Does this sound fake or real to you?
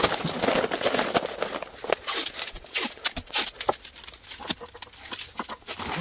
real